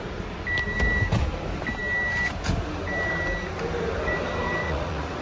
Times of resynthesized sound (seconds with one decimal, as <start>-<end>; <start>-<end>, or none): 4.6-5.2